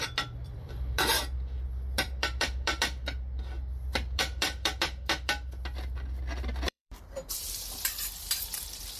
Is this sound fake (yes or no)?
yes